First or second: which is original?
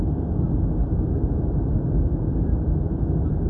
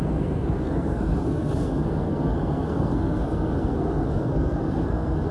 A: first